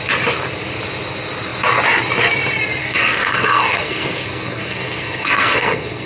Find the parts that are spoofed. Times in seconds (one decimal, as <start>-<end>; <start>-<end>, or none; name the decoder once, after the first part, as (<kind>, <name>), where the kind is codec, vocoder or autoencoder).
2.8-6.1 (codec, SNAC)